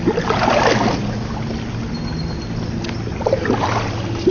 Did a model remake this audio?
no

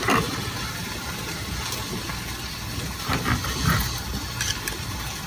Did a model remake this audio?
no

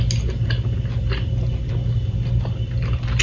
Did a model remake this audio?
no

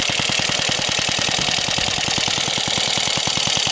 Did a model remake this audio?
no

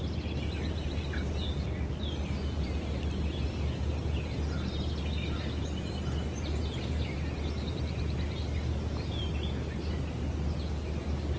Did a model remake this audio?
no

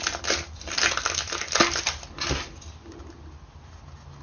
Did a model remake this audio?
no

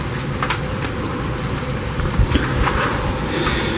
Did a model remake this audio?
no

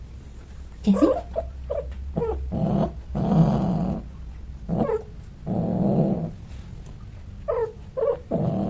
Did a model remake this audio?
no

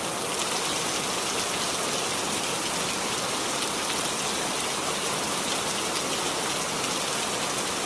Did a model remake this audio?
no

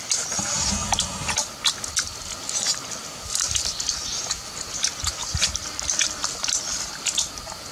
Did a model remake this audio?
no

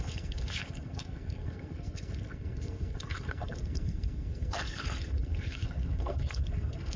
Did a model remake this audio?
yes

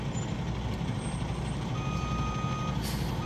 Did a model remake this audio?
no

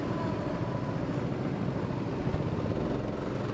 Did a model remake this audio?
no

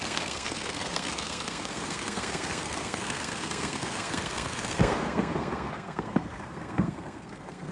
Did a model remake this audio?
yes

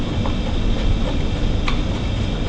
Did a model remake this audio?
no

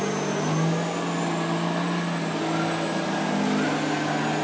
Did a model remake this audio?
no